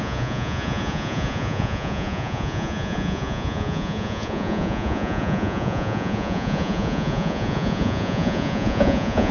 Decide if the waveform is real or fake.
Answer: fake